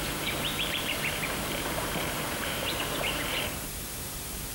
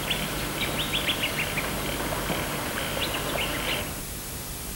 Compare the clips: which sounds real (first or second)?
second